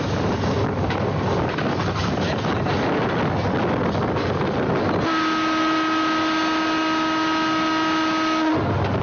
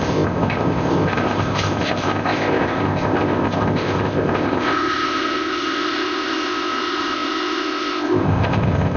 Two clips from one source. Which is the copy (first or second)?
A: second